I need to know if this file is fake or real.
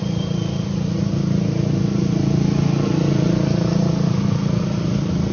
real